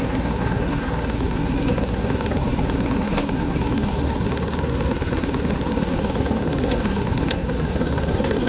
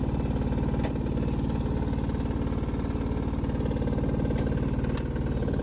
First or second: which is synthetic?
first